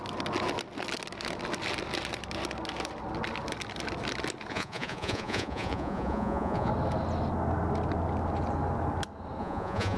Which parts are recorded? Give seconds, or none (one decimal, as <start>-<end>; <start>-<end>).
0.0-4.5; 6.7-9.4